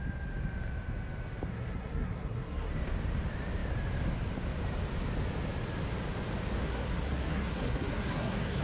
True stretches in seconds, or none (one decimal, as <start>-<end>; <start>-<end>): 0.0-1.5; 2.7-6.6